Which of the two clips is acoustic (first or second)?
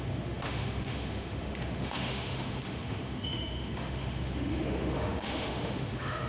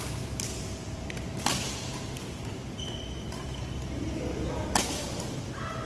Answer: second